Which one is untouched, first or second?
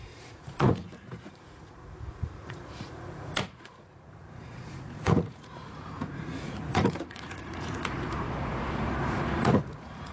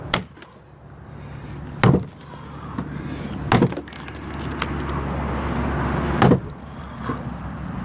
second